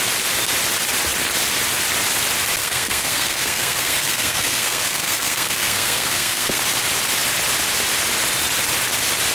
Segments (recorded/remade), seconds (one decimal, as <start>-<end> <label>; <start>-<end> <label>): 0.0-2.6 recorded; 2.6-6.6 remade; 6.6-9.3 recorded